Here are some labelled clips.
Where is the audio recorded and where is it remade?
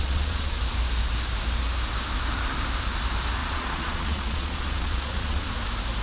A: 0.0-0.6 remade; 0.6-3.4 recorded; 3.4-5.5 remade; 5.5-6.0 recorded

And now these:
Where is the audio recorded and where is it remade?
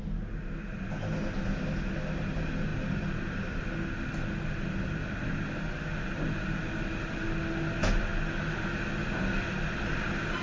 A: 0.0-10.4 recorded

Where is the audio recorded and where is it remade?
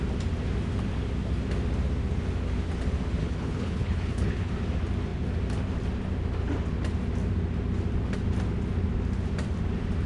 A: 0.0-3.2 recorded; 3.2-4.5 remade; 4.5-10.1 recorded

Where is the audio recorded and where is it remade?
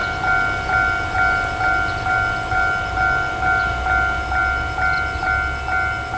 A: 0.0-6.2 recorded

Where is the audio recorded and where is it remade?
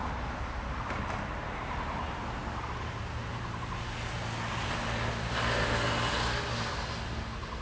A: 0.0-7.6 recorded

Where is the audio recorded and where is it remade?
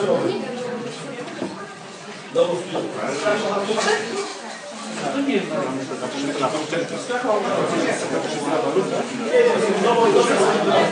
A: 0.0-4.3 remade; 4.3-9.0 recorded; 9.0-10.9 remade